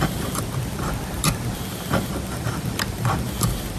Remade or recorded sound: remade